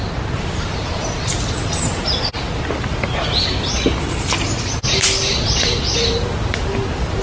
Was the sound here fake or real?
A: real